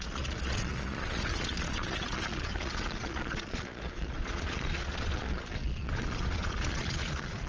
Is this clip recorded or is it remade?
remade